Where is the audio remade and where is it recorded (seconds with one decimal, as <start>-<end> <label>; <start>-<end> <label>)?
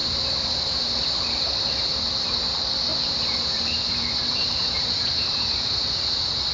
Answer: 0.0-2.0 remade; 2.0-2.9 recorded; 2.9-6.0 remade; 6.0-6.5 recorded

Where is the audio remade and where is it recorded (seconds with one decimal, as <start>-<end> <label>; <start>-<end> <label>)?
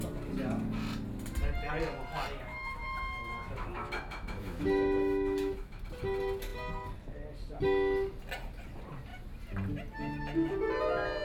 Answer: 0.0-2.5 recorded; 2.5-5.8 remade; 5.8-11.2 recorded